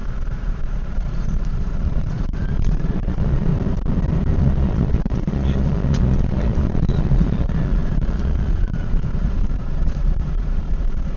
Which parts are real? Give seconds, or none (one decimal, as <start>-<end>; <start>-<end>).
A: 3.5-4.4